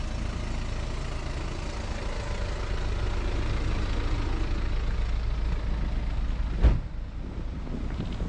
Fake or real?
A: real